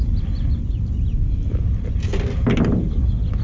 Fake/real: real